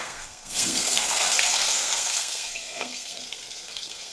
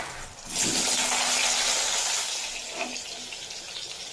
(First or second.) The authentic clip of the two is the second